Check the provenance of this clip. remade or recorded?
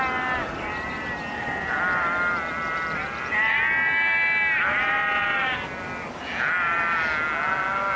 recorded